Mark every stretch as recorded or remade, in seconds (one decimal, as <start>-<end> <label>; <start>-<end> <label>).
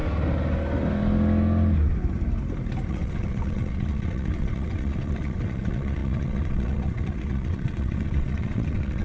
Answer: 0.0-2.9 recorded; 2.9-9.0 remade